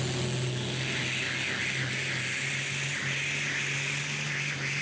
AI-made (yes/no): no